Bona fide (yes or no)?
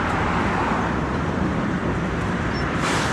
no